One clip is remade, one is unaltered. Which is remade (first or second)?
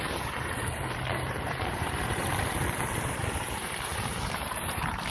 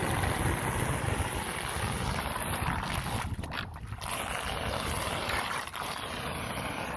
first